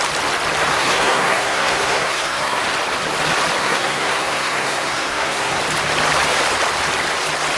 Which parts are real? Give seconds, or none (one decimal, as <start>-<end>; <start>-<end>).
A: 0.0-0.7; 2.6-3.6; 5.6-7.6